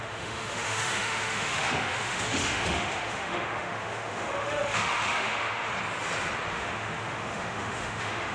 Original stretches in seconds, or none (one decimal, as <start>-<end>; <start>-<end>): 5.7-6.5